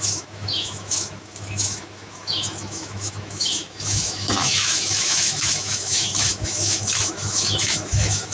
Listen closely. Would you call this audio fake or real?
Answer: fake